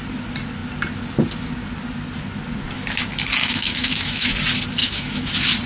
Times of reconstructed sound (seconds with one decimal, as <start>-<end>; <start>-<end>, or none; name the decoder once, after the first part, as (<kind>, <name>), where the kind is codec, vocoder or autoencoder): 3.4-4.3 (autoencoder, DAC-VAE); 4.8-5.3